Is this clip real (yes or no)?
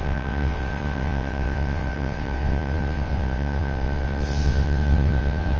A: no